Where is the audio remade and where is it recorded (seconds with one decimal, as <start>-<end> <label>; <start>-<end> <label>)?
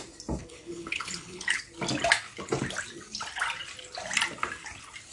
0.0-0.4 recorded; 0.4-1.6 remade; 1.6-5.1 recorded